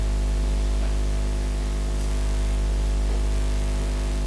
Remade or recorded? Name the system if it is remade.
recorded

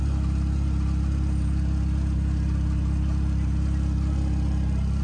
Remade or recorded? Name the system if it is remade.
recorded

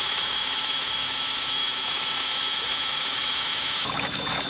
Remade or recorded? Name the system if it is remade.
remade, autoencoder, DAC-VAE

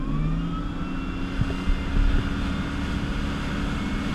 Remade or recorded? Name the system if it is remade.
recorded